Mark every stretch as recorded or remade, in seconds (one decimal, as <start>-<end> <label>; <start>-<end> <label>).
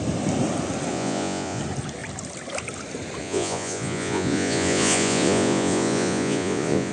0.0-0.9 recorded; 0.9-1.6 remade; 1.6-3.2 recorded; 3.2-6.9 remade